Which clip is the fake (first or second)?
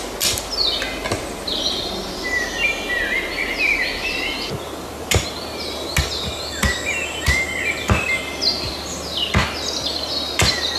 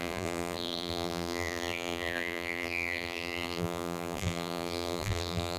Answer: second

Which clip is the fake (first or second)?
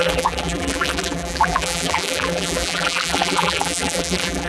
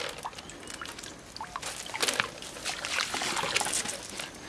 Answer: first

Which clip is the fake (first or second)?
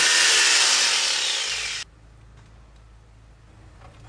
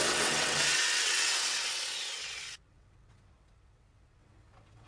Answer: second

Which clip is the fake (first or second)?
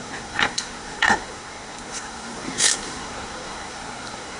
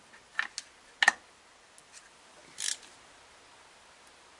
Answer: first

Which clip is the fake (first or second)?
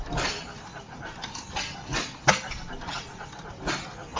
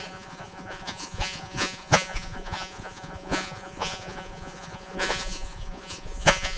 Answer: second